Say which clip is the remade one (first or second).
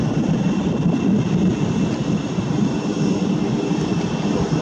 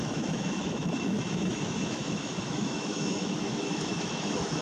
second